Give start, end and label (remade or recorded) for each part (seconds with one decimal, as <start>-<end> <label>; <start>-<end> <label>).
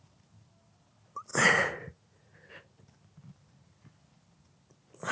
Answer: 0.0-1.3 recorded; 1.3-2.5 remade; 2.5-5.1 recorded